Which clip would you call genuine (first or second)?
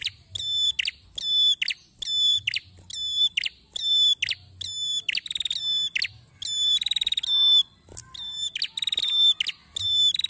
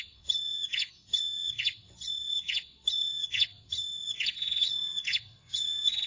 first